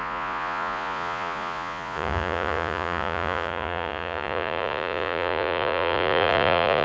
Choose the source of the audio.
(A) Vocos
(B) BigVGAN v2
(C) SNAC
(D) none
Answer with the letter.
A